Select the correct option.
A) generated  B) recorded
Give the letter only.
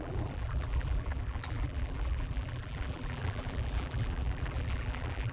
A